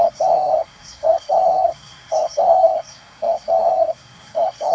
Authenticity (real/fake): fake